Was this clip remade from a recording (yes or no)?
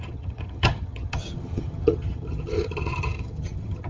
yes